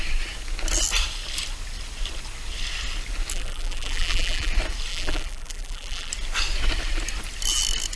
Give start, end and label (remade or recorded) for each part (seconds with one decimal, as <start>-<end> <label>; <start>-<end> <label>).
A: 0.0-3.3 recorded; 3.3-4.5 remade; 4.5-4.9 recorded; 4.9-6.1 remade; 6.1-8.0 recorded